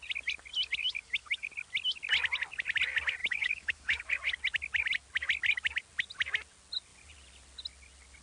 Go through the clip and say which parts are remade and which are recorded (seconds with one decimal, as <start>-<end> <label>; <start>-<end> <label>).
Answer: 0.0-0.8 recorded; 0.8-1.5 remade; 1.5-3.2 recorded; 3.2-4.0 remade; 4.0-8.2 recorded